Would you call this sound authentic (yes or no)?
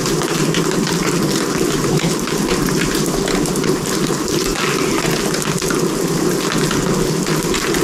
yes